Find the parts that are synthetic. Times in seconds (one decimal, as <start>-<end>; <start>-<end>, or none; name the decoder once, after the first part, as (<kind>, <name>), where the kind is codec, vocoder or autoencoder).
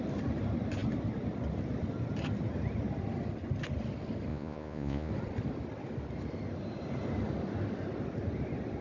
4.3-5.1 (vocoder, Vocos)